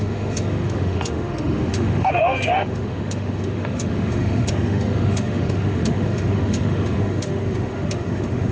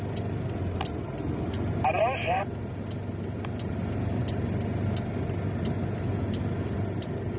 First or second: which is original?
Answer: second